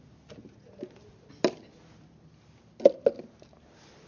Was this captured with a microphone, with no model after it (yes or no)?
yes